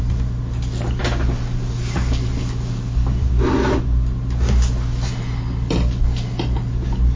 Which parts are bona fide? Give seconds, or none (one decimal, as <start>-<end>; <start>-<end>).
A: 0.0-7.2